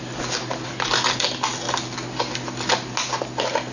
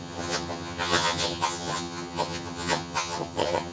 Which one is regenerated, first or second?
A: second